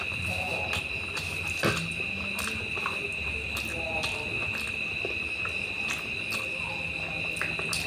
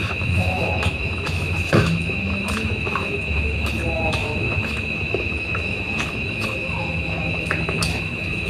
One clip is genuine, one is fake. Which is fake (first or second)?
second